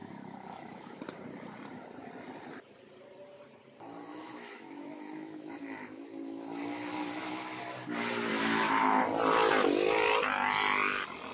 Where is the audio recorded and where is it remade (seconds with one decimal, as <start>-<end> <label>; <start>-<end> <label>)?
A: 0.0-1.0 remade; 1.0-4.1 recorded; 4.1-7.6 remade; 7.6-8.3 recorded; 8.3-9.0 remade; 9.0-11.3 recorded